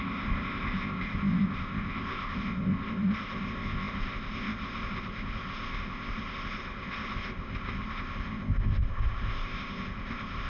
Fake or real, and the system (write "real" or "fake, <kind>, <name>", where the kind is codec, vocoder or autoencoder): fake, codec, ZipCodec